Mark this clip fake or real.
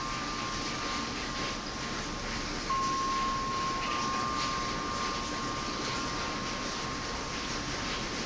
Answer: real